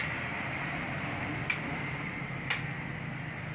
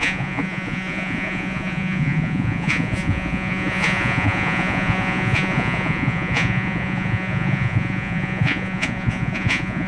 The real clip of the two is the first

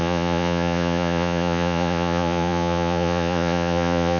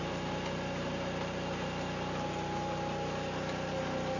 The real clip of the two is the second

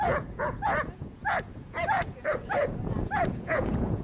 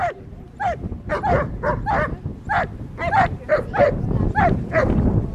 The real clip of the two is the second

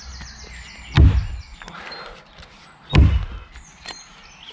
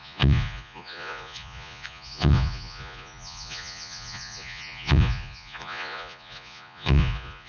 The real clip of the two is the first